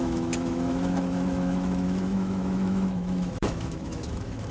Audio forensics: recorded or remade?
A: remade